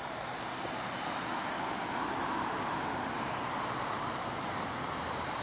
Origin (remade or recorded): remade